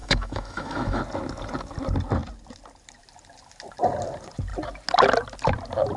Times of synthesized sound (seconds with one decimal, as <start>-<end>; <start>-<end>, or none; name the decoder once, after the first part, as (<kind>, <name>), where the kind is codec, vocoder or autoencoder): 0.0-1.0 (autoencoder, DAC-VAE)